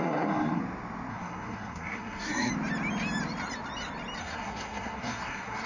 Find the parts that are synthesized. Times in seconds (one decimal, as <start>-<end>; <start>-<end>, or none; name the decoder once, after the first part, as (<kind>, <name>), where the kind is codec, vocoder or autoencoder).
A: 0.0-0.6 (codec, SNAC); 1.1-2.5; 4.2-5.7